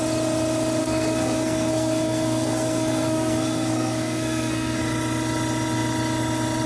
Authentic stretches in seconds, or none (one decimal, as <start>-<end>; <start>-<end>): 0.0-0.8; 4.8-6.7